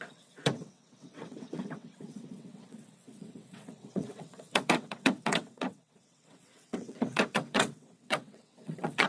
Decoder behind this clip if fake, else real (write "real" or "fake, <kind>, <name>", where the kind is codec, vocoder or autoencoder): fake, vocoder, WaveNeXt